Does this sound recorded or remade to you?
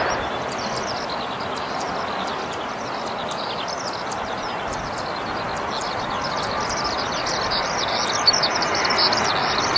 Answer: recorded